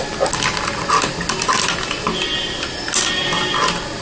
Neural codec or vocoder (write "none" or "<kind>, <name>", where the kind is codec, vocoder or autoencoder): none